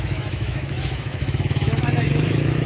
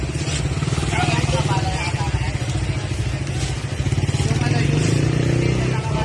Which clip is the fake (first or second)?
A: first